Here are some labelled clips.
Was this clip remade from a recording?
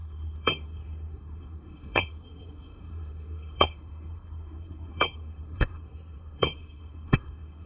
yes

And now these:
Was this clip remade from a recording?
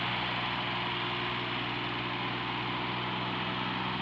no